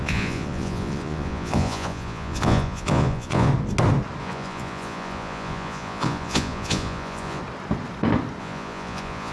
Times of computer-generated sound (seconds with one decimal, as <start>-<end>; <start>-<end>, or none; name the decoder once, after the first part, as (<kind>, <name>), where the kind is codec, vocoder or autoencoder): 0.0-3.5 (vocoder, Vocos); 4.2-7.4; 8.4-9.3